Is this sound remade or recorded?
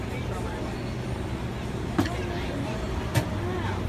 recorded